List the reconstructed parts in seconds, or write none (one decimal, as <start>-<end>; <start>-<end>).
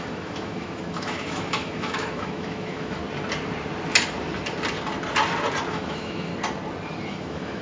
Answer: 0.0-3.0; 5.7-6.3; 7.1-7.6